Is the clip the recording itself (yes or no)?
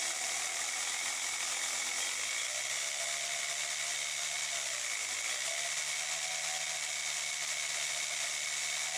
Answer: yes